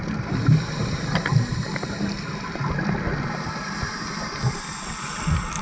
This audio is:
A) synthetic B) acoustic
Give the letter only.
B